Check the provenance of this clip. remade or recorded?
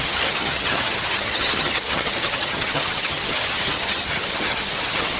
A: remade